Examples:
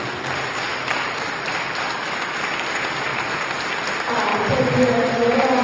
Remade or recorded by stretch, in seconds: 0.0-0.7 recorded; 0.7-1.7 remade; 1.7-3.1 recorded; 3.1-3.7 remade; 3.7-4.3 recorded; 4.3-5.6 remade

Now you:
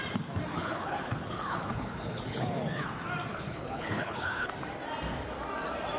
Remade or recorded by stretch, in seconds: 0.0-0.5 recorded; 0.5-2.9 remade; 2.9-3.3 recorded; 3.3-4.5 remade; 4.5-6.0 recorded

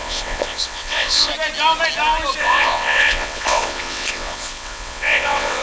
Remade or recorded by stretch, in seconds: 0.0-1.3 remade; 1.3-2.4 recorded; 2.4-5.6 remade

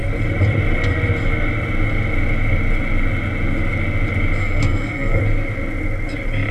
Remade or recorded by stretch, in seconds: 0.0-4.4 recorded; 4.4-5.2 remade; 5.2-6.5 recorded